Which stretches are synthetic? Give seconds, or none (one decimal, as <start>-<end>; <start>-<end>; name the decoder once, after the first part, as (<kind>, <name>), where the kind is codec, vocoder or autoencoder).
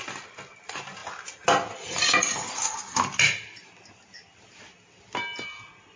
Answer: none